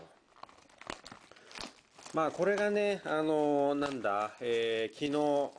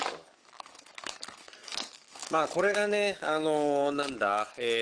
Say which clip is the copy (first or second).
second